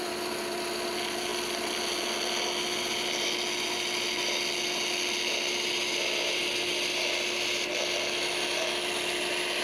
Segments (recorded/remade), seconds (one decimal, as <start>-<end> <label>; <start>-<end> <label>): 0.0-9.6 recorded